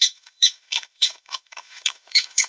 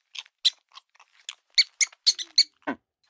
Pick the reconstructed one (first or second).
first